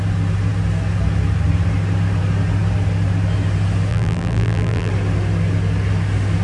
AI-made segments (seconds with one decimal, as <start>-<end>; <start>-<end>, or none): 3.9-4.9